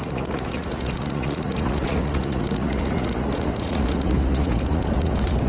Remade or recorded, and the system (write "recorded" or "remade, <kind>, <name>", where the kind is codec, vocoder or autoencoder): remade, vocoder, Vocos